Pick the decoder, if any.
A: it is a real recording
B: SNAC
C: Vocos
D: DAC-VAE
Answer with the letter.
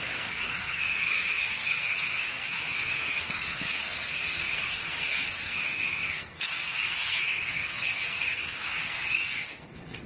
B